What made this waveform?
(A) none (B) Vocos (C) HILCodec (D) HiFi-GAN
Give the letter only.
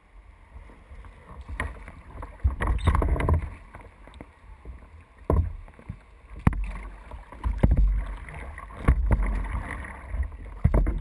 A